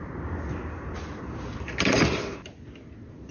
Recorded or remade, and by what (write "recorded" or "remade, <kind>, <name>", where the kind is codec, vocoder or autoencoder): recorded